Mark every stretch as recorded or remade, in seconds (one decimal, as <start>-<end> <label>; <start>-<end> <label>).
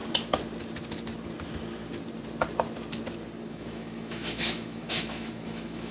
0.0-3.5 recorded; 3.5-5.9 remade